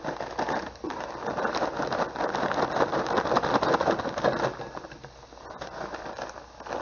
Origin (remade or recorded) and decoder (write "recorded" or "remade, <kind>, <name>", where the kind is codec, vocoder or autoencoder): recorded